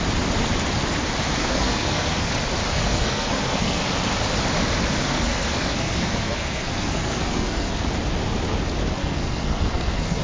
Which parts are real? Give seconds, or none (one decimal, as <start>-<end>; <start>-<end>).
0.0-1.4; 2.3-2.7; 3.8-5.0; 7.7-9.0